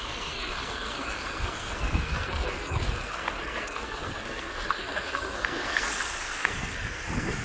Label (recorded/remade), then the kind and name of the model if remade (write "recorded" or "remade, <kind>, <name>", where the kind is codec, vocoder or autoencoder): remade, codec, SNAC